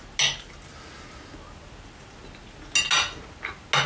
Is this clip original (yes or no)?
yes